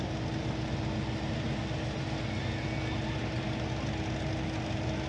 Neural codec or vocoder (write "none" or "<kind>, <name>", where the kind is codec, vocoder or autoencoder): none